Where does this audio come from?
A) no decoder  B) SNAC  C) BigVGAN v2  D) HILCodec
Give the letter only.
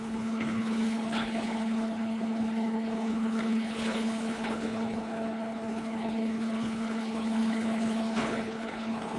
D